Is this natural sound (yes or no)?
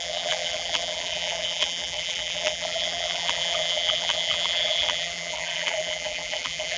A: no